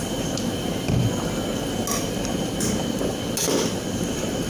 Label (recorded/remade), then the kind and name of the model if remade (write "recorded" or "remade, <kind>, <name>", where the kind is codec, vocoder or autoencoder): recorded